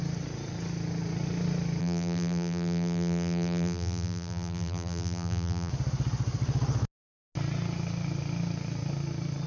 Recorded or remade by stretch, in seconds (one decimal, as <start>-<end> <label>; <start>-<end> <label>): 0.0-1.8 recorded; 1.8-5.7 remade; 5.7-9.5 recorded